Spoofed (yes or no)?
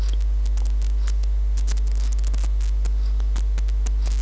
no